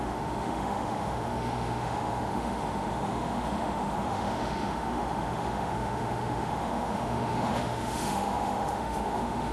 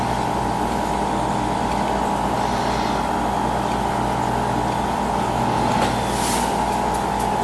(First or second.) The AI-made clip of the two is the first